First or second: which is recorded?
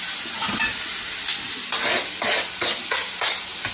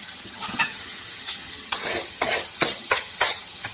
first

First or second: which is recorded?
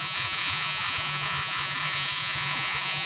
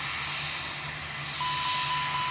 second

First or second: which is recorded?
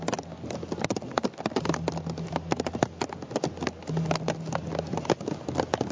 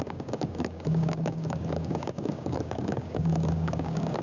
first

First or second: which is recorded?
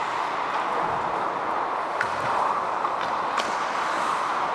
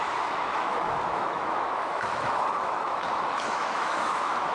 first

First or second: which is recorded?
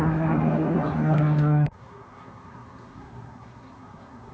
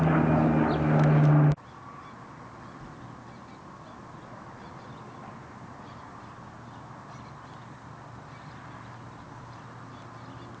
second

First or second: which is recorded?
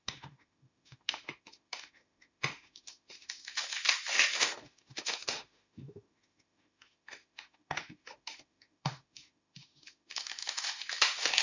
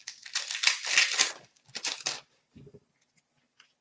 second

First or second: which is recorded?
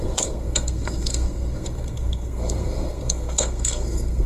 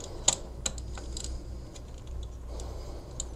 second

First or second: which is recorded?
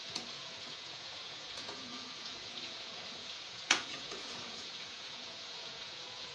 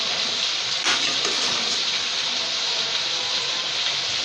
second